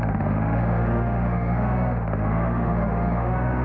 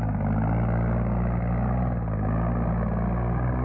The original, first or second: second